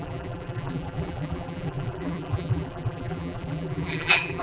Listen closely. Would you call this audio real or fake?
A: fake